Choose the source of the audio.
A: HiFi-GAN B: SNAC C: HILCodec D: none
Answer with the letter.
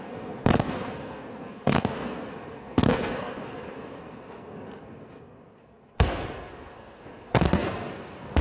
B